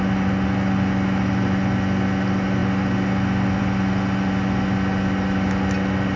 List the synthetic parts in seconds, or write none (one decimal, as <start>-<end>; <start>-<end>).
none